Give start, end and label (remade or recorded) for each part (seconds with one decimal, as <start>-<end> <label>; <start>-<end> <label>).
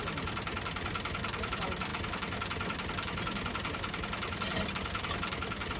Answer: 0.0-5.8 recorded